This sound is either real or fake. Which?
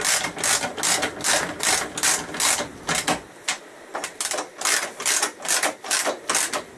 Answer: real